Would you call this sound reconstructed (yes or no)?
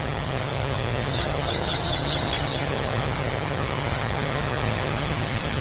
yes